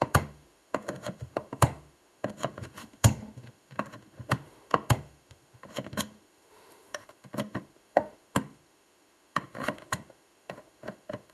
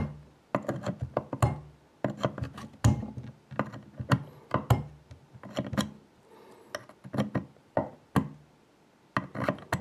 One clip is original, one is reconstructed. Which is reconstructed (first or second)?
first